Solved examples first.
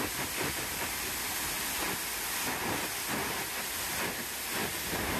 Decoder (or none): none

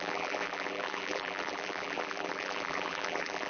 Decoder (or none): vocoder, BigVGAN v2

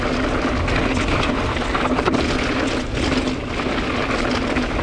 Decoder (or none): none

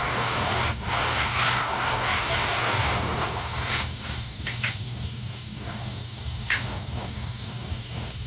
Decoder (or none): codec, DAC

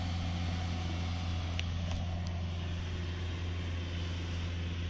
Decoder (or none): none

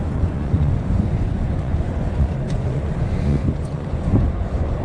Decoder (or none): vocoder, Vocos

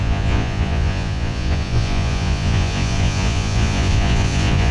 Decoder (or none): vocoder, Vocos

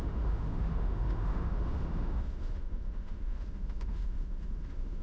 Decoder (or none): autoencoder, DAC-VAE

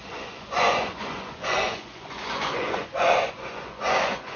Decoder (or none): vocoder, Vocos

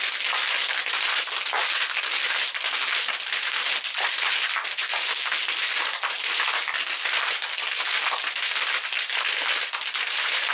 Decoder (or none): none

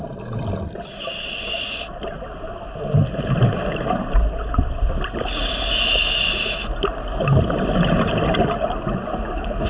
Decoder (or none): none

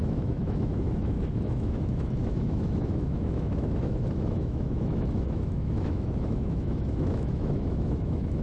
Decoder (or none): autoencoder, DAC-VAE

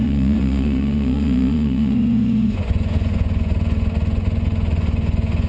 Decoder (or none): vocoder, Vocos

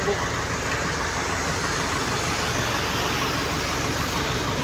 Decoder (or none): none